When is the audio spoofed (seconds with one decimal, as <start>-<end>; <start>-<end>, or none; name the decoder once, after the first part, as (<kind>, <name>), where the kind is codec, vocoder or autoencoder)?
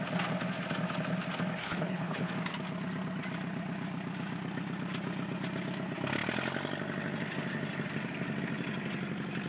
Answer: 1.6-2.3 (codec, HILCodec)